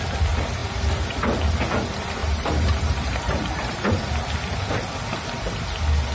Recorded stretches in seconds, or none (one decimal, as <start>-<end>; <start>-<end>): 0.0-2.2; 4.0-6.1